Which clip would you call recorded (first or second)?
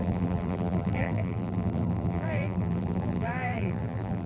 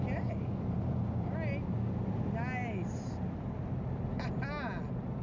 second